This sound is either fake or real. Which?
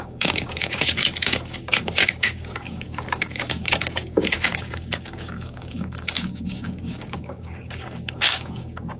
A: fake